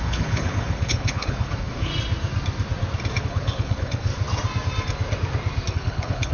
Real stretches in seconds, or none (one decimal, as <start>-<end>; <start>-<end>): 1.9-3.2; 4.1-5.7